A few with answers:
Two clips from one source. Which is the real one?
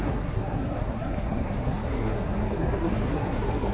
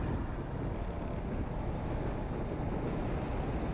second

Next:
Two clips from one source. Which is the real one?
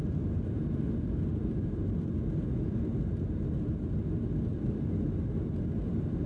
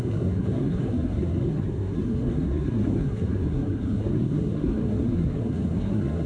first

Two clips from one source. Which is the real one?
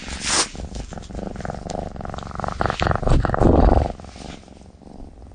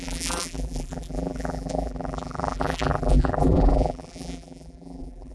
first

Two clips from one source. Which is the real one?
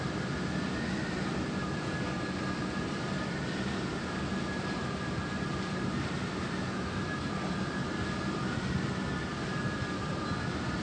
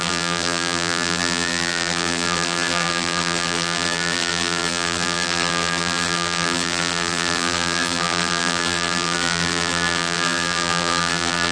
first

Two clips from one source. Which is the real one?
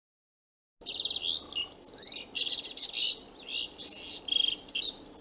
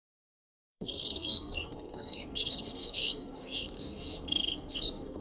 first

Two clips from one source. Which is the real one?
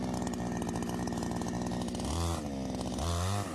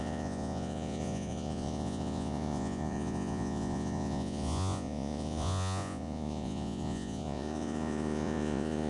first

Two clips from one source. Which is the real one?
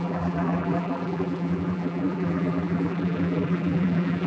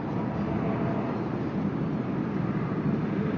second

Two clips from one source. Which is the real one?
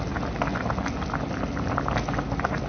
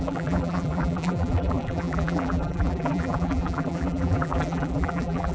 first